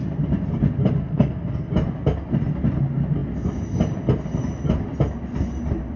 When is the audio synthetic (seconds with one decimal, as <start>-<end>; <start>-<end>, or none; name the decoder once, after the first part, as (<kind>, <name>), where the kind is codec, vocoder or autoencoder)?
1.0-1.7 (codec, SNAC)